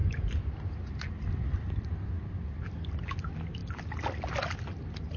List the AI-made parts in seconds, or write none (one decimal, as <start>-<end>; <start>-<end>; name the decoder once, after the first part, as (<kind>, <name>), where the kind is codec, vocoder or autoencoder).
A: none